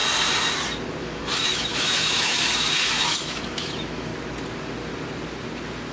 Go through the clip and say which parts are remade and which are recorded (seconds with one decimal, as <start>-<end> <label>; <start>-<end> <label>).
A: 0.0-1.0 recorded; 1.0-4.1 remade; 4.1-5.9 recorded